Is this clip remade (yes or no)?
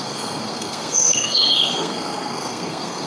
yes